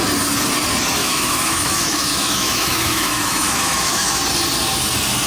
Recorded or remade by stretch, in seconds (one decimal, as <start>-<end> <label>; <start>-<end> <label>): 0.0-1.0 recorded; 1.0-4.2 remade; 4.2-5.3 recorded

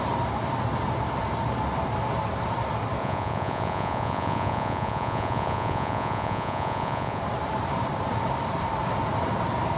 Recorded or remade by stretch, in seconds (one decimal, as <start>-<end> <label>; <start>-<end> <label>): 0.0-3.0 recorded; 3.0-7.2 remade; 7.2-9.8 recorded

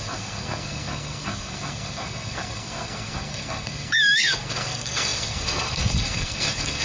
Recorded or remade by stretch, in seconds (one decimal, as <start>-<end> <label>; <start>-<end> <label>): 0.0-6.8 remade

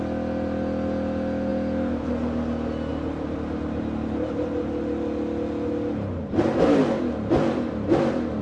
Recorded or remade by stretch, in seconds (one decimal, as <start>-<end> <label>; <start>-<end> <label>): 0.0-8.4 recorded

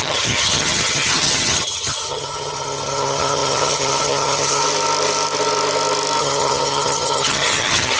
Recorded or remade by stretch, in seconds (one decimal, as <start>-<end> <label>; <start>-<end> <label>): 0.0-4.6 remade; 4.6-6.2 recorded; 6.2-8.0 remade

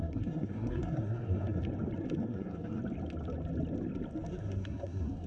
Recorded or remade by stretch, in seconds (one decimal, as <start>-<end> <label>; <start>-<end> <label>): 0.0-1.6 remade; 1.6-2.2 recorded; 2.2-2.8 remade; 2.8-4.3 recorded; 4.3-5.3 remade

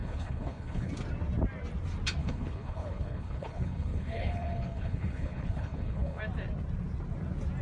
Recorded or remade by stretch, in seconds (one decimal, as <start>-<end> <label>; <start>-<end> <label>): 0.0-0.9 remade; 0.9-2.2 recorded; 2.2-6.2 remade; 6.2-7.6 recorded

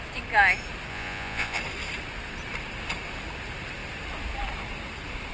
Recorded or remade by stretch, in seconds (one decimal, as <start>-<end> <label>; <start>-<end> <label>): 0.0-0.9 recorded; 0.9-1.6 remade; 1.6-5.3 recorded